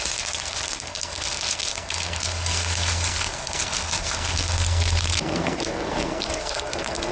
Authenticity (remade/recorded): remade